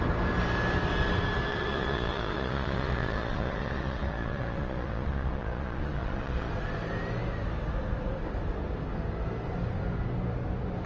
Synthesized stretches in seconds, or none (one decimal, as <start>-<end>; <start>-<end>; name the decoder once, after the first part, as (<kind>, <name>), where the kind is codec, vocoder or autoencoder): 1.5-6.5 (vocoder, Vocos)

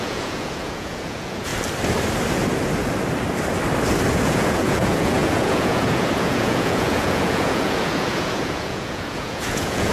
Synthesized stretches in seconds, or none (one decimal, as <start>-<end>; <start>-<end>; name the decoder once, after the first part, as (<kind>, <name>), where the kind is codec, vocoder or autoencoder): 0.0-1.5 (vocoder, Vocos); 4.1-9.9

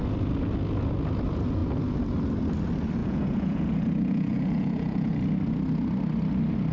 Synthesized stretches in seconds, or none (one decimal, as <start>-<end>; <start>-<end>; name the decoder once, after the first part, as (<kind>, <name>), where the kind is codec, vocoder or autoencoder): 3.0-5.1 (vocoder, Vocos)

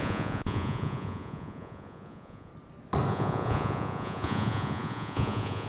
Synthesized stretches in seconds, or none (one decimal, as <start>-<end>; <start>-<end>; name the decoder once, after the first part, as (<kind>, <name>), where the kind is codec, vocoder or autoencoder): 0.0-2.5 (vocoder, Vocos); 3.1-5.7

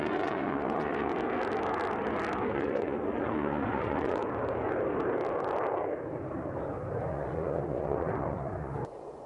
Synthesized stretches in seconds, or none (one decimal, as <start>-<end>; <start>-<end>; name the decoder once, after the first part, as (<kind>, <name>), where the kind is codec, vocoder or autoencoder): 0.0-1.1 (vocoder, Vocos); 2.5-4.2; 7.1-9.3

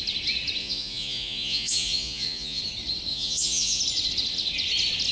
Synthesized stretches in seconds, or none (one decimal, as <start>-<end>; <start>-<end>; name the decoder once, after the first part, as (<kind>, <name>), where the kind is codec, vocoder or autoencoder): 0.6-2.6 (vocoder, Vocos); 3.1-3.8

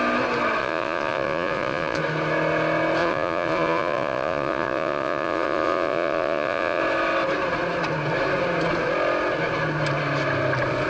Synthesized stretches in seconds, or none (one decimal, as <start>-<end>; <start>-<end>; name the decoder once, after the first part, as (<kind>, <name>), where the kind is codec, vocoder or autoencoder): 0.6-2.0 (vocoder, Vocos); 3.0-6.8